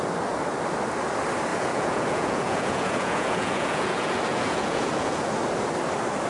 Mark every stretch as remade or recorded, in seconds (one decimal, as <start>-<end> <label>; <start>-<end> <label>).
0.0-1.5 recorded; 1.5-5.3 remade; 5.3-6.3 recorded